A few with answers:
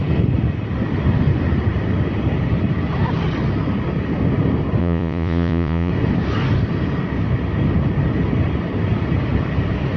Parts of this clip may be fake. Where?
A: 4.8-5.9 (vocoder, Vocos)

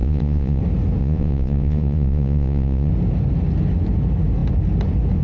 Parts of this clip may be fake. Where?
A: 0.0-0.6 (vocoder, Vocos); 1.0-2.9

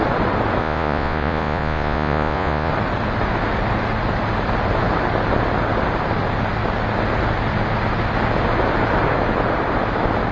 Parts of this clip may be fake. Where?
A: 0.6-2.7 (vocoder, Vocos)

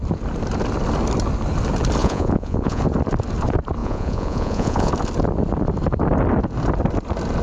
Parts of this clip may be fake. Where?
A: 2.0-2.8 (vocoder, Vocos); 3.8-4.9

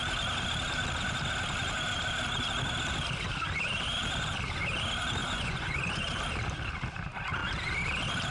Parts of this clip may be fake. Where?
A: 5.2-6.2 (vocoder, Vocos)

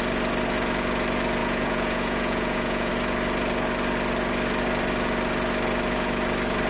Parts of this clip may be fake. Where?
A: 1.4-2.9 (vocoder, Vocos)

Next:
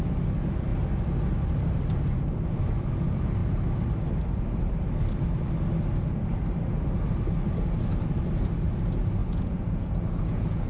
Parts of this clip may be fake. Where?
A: 9.2-10.7 (vocoder, Vocos)